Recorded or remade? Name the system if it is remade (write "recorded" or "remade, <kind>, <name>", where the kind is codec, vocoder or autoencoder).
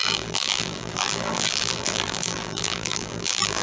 remade, vocoder, BigVGAN v2